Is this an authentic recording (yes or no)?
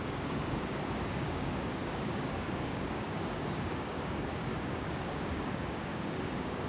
no